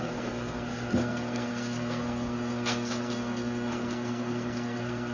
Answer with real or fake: fake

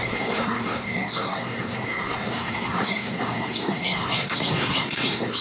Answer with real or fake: fake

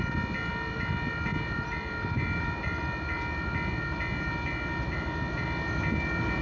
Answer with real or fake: real